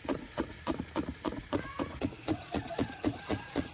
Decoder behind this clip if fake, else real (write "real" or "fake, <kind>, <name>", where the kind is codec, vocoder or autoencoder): fake, vocoder, Vocos